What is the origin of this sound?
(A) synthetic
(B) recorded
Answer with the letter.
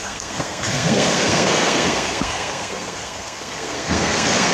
A